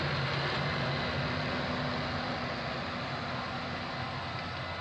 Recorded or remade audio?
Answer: recorded